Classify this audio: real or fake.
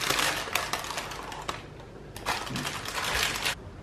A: real